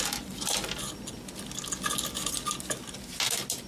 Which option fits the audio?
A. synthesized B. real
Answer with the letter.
B